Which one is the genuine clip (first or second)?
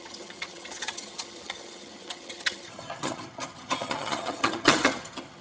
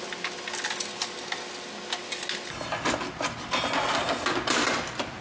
second